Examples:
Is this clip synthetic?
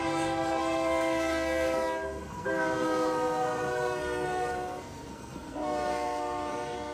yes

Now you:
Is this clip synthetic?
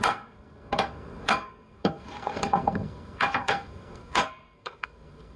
yes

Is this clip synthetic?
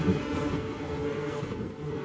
yes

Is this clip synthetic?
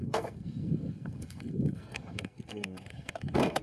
yes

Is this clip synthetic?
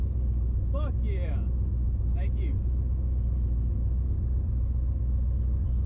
no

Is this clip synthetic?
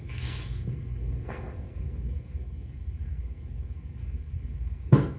yes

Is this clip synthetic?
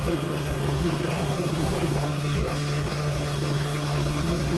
yes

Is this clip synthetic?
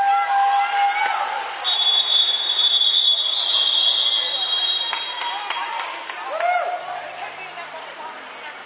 no